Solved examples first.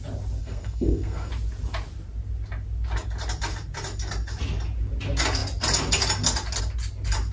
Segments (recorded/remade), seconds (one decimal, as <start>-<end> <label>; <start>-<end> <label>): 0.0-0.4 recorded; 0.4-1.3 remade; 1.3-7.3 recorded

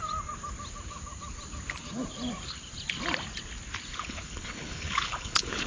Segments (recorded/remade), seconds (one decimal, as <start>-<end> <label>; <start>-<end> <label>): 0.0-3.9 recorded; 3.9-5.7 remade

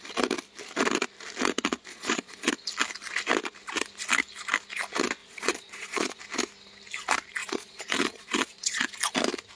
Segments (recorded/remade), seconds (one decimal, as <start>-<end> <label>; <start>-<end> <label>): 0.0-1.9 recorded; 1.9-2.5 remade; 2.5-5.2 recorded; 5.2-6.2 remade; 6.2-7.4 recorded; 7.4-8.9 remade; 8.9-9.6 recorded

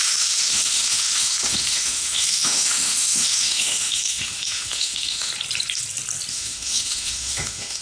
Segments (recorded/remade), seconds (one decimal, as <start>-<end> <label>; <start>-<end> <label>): 0.0-5.3 remade; 5.3-6.3 recorded; 6.3-7.8 remade

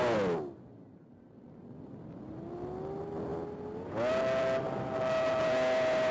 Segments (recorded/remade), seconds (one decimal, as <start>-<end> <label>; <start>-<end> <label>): 0.0-6.1 recorded